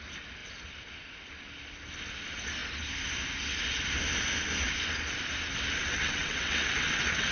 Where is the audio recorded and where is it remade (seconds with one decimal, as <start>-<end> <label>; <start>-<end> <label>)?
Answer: 0.0-5.8 recorded; 5.8-7.3 remade